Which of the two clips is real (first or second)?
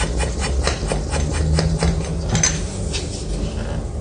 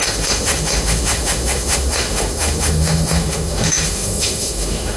first